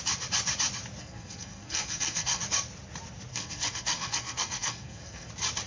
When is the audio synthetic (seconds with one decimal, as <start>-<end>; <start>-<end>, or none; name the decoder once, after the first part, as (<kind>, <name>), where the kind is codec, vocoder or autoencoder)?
1.0-2.4 (codec, SNAC); 3.3-5.3